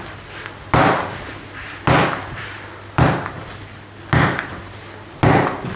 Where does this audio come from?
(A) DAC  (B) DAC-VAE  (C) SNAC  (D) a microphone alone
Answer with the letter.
D